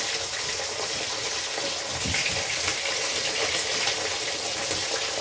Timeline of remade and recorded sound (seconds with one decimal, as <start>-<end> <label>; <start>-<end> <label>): 0.0-5.2 recorded